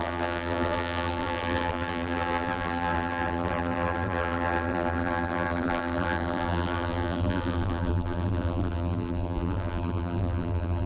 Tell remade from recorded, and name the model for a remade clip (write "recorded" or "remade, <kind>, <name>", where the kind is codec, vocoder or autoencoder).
remade, vocoder, BigVGAN v2